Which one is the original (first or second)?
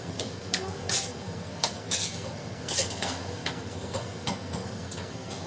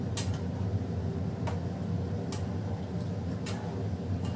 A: second